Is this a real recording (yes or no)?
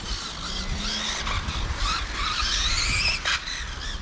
yes